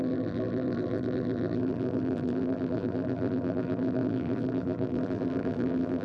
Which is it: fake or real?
fake